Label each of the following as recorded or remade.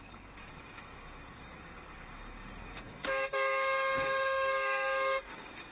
remade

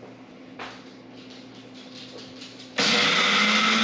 recorded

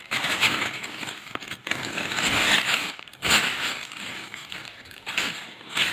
remade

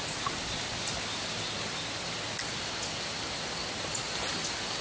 recorded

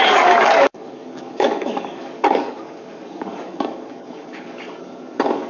remade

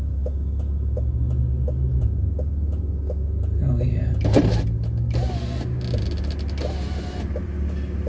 recorded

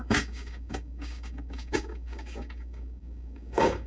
remade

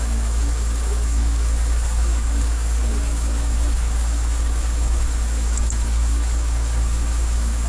remade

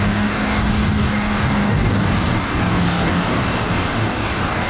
remade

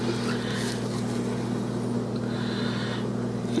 recorded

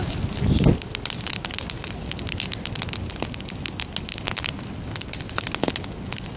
recorded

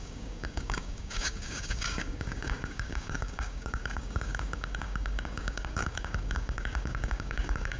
remade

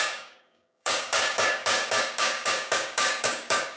remade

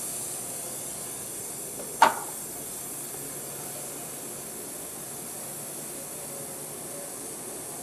recorded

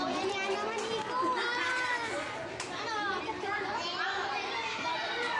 recorded